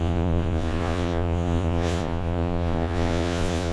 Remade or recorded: remade